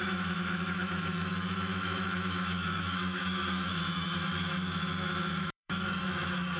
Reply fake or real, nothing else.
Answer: fake